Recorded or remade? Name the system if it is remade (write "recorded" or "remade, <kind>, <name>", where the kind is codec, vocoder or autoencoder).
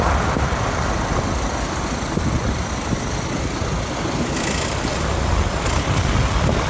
recorded